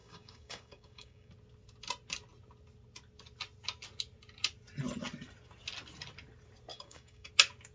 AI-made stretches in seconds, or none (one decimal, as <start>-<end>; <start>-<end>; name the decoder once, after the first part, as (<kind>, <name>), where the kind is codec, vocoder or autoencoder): 0.0-1.3 (codec, DAC); 6.7-7.3

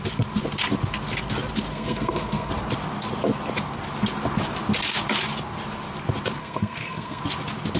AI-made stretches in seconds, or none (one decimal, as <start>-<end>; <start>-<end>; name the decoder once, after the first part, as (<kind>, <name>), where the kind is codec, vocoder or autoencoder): 1.7-2.5 (codec, SNAC); 6.4-7.2

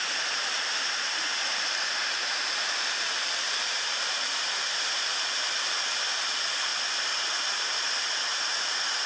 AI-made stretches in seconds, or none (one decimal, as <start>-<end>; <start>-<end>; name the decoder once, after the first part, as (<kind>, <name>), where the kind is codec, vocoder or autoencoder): 0.0-6.7 (vocoder, BigVGAN v2); 7.4-9.1

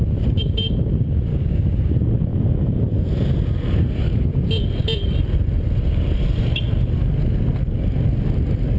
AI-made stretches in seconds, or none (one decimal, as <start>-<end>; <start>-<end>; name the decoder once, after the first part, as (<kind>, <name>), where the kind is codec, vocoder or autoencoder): 1.3-1.9 (codec, DAC)

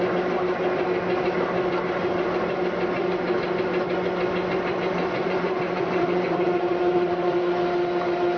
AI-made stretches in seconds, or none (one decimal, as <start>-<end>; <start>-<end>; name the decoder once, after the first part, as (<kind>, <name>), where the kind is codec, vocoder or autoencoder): 5.0-7.4 (vocoder, Vocos)

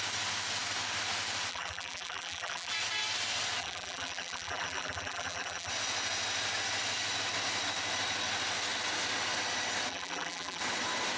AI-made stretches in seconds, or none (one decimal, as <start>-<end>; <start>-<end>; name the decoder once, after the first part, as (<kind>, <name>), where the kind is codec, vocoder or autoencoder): 1.5-2.7 (vocoder, BigVGAN v2); 3.6-5.7; 9.9-10.6